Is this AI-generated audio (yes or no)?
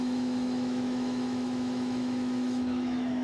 yes